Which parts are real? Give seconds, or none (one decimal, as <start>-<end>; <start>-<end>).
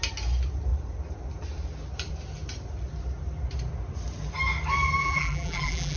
0.0-5.0